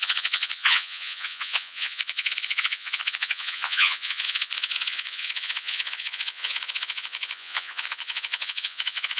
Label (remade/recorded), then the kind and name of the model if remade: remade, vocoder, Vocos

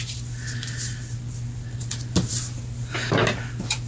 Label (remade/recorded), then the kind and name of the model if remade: recorded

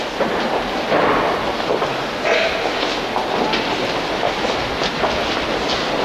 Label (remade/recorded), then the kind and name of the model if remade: recorded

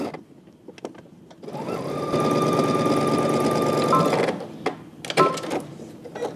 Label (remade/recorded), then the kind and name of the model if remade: recorded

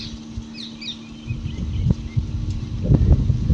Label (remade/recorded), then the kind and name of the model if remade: recorded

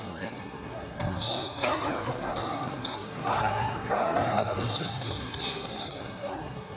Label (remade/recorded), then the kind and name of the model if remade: remade, codec, SNAC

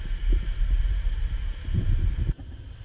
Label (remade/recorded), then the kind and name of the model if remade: recorded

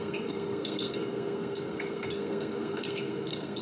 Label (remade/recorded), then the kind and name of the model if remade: remade, codec, SNAC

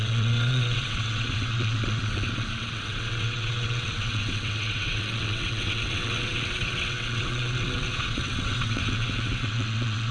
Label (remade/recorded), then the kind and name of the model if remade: remade, vocoder, WaveNeXt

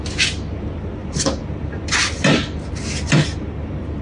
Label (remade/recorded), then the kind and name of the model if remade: recorded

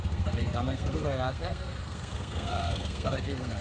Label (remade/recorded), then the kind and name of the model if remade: remade, codec, SNAC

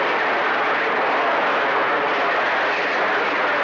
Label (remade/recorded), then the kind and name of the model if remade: recorded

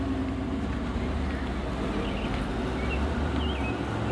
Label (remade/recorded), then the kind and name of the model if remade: recorded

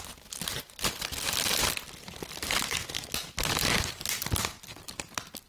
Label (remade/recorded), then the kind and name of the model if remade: recorded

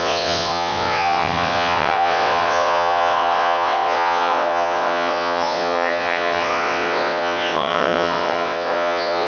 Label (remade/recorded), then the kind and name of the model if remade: remade, vocoder, WaveNeXt